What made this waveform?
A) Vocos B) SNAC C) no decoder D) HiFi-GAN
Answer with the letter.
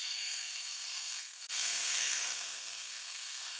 B